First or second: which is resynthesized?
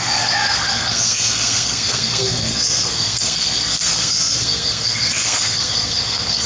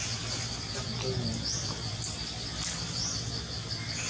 first